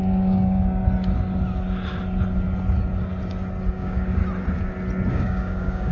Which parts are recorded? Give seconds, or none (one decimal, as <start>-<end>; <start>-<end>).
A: 0.8-3.7; 4.2-5.1